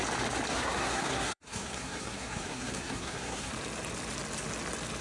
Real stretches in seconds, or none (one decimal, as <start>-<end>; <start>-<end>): 0.0-0.5; 3.5-5.0